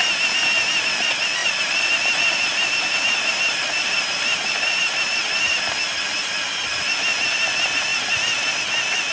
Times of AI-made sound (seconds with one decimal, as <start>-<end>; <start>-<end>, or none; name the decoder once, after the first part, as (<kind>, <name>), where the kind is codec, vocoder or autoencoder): 1.4-5.6 (vocoder, BigVGAN v2)